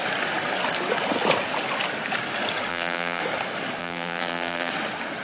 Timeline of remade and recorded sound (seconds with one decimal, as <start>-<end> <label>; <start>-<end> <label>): 0.0-2.7 recorded; 2.7-3.2 remade; 3.2-3.8 recorded; 3.8-4.7 remade; 4.7-5.2 recorded